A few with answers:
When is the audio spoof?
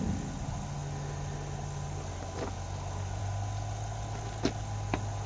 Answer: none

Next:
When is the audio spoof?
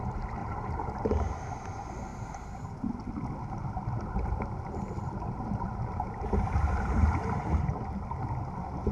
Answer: 0.4-1.4 (vocoder, BigVGAN v2); 2.1-2.6; 3.8-7.7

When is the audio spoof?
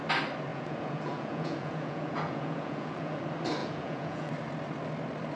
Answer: 0.5-3.2 (vocoder, Vocos); 3.6-4.3